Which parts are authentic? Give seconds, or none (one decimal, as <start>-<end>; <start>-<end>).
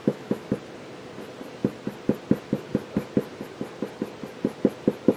0.5-5.2